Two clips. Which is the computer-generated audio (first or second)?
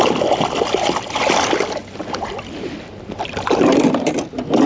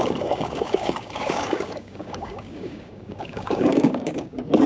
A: second